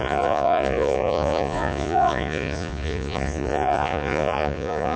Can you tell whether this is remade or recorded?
remade